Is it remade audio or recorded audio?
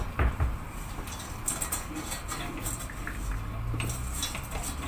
recorded